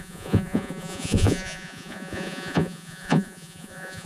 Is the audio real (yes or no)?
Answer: no